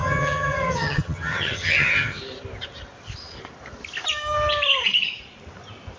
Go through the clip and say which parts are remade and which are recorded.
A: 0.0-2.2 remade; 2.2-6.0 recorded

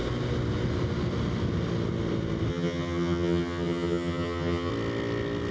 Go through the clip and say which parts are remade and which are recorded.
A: 0.0-2.5 recorded; 2.5-4.7 remade; 4.7-5.5 recorded

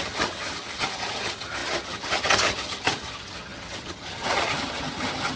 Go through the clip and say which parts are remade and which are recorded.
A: 0.0-5.4 remade

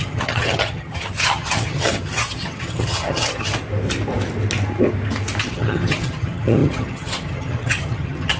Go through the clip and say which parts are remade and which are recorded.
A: 0.0-3.5 remade; 3.5-5.4 recorded; 5.4-8.4 remade

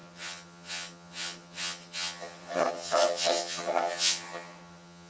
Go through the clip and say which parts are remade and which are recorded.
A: 0.0-5.1 remade

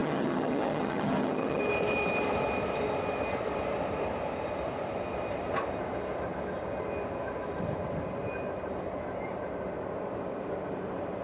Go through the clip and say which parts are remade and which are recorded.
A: 0.0-1.6 remade; 1.6-11.2 recorded

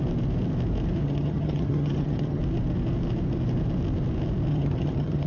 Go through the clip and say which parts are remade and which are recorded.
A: 0.0-1.0 recorded; 1.0-2.4 remade; 2.4-4.5 recorded; 4.5-5.3 remade

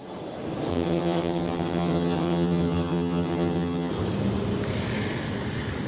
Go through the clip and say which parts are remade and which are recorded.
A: 0.0-0.7 recorded; 0.7-3.9 remade; 3.9-5.9 recorded